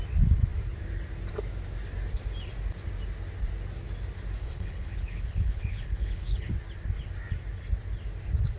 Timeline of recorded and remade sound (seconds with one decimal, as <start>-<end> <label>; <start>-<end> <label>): 0.0-4.4 recorded; 4.4-6.5 remade; 6.5-8.6 recorded